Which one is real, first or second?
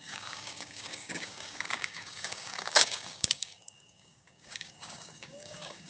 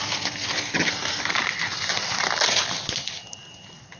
second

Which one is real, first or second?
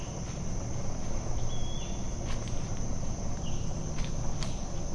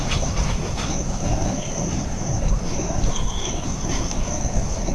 first